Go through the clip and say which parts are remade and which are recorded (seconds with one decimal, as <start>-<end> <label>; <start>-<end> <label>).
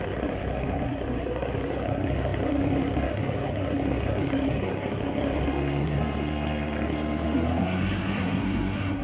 0.0-9.0 remade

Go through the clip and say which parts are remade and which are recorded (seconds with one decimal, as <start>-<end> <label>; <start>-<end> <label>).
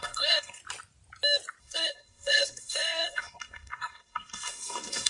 0.0-0.6 remade; 0.6-1.6 recorded; 1.6-5.1 remade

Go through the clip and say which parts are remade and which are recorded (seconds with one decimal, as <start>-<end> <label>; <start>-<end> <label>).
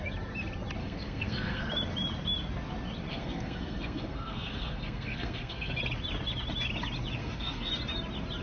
0.0-0.8 recorded; 0.8-1.6 remade; 1.6-3.1 recorded; 3.1-5.8 remade; 5.8-7.2 recorded; 7.2-7.7 remade; 7.7-8.4 recorded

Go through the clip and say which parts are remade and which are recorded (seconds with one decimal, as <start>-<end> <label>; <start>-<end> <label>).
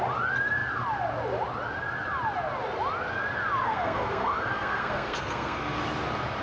0.0-3.6 recorded; 3.6-5.8 remade; 5.8-6.4 recorded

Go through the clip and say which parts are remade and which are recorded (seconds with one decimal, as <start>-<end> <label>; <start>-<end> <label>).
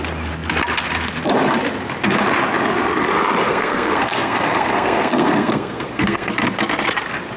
0.0-3.5 recorded; 3.5-6.3 remade; 6.3-7.4 recorded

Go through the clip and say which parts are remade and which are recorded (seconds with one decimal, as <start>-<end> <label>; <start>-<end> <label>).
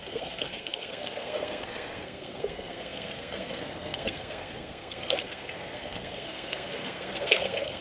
0.0-7.8 remade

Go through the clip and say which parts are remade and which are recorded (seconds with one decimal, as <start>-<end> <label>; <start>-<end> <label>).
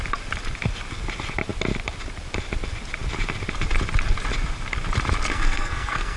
0.0-5.3 recorded; 5.3-6.2 remade